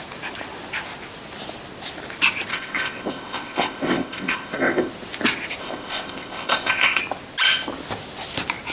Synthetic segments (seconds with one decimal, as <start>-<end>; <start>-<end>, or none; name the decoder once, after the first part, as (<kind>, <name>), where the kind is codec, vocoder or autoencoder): 2.5-4.9 (codec, ZipCodec); 5.6-7.0